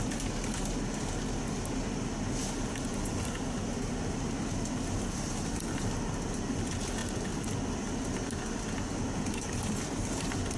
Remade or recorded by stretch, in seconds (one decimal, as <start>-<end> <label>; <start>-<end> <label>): 0.0-10.6 recorded